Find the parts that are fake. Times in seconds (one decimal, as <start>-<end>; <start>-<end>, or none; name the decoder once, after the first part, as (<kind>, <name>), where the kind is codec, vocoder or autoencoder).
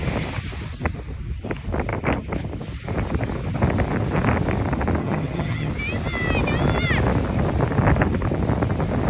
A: 5.0-5.7 (vocoder, HiFi-GAN)